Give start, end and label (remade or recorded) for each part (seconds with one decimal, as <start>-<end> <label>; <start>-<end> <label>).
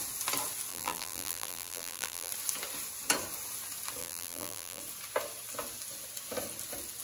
0.0-0.7 recorded; 0.7-2.3 remade; 2.3-4.0 recorded; 4.0-4.8 remade; 4.8-7.0 recorded